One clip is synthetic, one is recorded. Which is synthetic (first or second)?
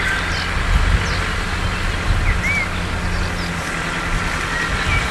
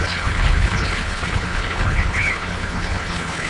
second